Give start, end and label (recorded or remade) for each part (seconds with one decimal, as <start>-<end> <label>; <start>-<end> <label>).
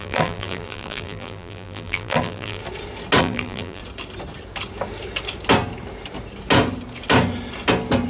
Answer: 0.0-2.6 remade; 2.6-3.2 recorded; 3.2-3.8 remade; 3.8-8.1 recorded